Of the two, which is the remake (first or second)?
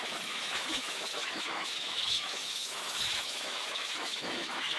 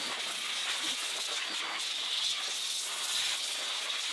first